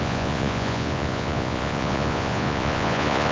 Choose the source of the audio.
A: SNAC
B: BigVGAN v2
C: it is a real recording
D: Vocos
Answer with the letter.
D